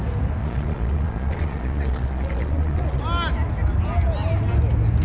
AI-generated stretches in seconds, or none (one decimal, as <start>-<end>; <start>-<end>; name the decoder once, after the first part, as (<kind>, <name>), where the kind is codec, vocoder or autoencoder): 0.4-3.0 (vocoder, Vocos)

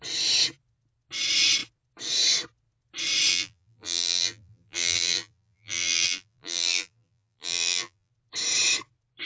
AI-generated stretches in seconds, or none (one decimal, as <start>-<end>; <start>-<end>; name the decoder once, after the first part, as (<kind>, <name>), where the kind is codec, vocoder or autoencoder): 3.3-8.1 (vocoder, BigVGAN v2)

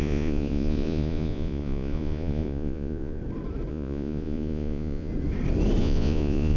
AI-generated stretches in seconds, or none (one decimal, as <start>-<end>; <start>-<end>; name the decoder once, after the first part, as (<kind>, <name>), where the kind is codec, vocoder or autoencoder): 0.0-3.2 (vocoder, Vocos); 3.7-5.1; 5.8-6.6

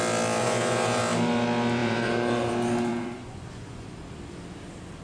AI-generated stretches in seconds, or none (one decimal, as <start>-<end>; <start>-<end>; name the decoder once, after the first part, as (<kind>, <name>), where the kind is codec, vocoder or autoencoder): 0.4-1.0 (vocoder, Vocos); 1.8-2.5; 2.9-4.1

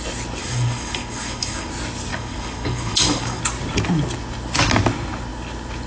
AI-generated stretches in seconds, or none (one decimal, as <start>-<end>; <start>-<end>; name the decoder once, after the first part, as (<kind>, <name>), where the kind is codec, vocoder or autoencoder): 0.4-1.7 (codec, DAC); 2.1-3.4

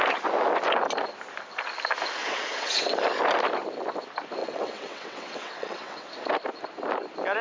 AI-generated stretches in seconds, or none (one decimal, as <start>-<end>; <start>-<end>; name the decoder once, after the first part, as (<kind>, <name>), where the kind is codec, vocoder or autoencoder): 2.2-2.9 (vocoder, WaveNeXt); 4.4-6.1

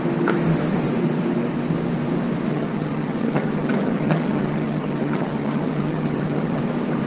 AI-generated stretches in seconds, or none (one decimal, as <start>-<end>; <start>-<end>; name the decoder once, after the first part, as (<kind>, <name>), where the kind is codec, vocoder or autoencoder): 2.5-6.6 (vocoder, HiFi-GAN)